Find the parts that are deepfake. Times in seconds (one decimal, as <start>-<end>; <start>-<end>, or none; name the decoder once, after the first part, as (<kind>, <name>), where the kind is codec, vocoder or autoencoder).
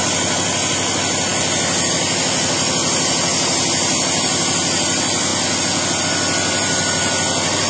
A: none